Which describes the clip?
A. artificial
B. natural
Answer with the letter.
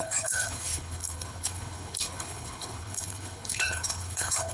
A